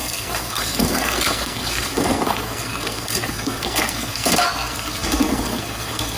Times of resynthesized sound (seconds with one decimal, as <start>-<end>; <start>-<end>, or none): 0.0-6.2